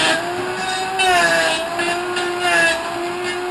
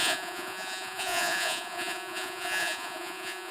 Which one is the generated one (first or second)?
second